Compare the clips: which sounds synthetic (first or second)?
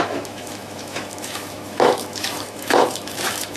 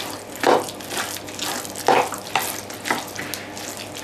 first